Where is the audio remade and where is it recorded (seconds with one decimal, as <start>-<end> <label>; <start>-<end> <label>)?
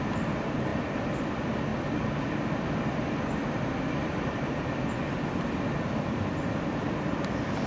0.0-7.7 recorded